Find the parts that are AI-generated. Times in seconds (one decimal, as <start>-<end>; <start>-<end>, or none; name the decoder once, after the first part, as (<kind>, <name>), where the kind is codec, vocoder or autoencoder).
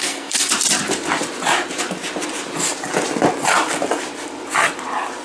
0.0-0.5 (codec, SNAC)